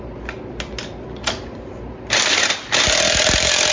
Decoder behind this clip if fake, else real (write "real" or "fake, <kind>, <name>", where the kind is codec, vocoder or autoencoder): real